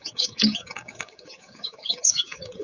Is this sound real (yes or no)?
no